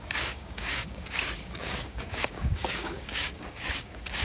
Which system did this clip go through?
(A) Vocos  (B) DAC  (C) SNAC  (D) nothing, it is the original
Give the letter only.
B